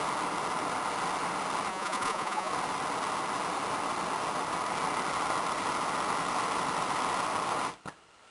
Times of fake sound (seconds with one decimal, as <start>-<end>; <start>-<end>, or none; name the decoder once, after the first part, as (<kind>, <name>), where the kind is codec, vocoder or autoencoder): 1.7-2.5 (vocoder, Vocos)